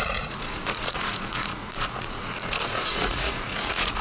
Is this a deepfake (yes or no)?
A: yes